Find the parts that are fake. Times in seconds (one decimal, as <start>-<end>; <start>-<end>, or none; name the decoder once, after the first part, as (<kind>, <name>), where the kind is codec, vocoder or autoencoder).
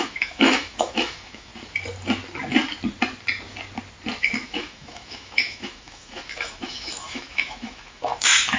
0.0-1.5 (autoencoder, DAC-VAE); 4.2-8.6